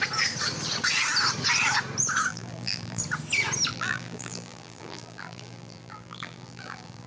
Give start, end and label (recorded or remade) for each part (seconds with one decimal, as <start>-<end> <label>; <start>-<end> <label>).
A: 0.0-2.3 recorded; 2.3-3.0 remade; 3.0-3.7 recorded; 3.7-7.1 remade